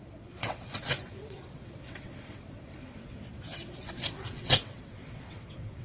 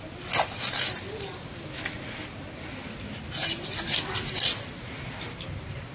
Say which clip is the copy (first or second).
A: first